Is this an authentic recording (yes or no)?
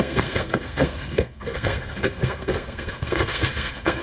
no